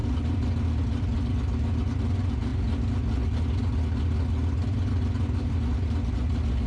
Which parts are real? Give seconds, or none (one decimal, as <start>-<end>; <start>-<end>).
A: 0.0-6.7